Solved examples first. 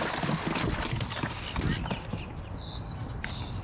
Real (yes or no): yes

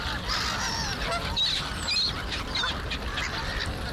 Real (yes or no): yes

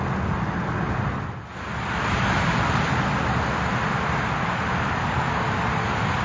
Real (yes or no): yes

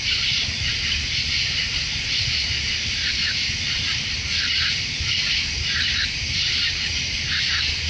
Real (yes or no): no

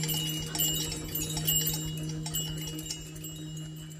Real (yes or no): yes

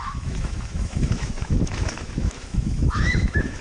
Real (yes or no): no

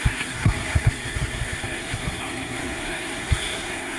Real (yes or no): no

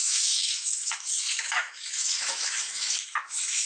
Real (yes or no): no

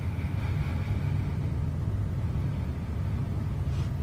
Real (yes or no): yes